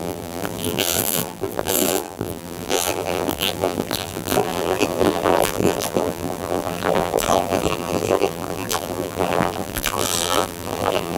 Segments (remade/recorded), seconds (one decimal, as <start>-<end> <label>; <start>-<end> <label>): 0.0-11.2 remade